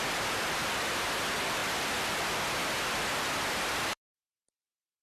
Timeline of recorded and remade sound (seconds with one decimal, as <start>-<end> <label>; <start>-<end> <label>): 0.0-1.6 remade; 1.6-2.2 recorded; 2.2-5.0 remade